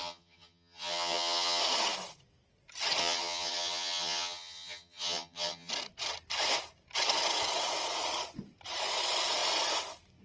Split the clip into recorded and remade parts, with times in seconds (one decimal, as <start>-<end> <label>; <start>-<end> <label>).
0.0-1.6 remade; 1.6-3.0 recorded; 3.0-5.7 remade; 5.7-10.2 recorded